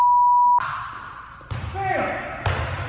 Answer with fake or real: real